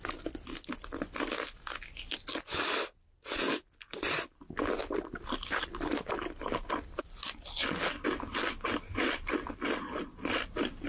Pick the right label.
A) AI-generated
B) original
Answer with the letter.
B